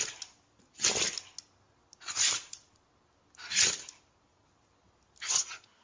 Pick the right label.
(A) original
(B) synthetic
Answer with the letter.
A